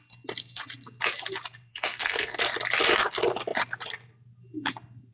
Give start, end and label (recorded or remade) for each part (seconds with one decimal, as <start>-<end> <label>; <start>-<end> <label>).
0.0-1.7 recorded; 1.7-2.4 remade; 2.4-5.1 recorded